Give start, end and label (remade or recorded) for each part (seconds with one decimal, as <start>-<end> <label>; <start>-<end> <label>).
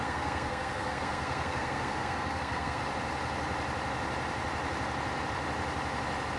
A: 0.0-2.8 remade; 2.8-6.4 recorded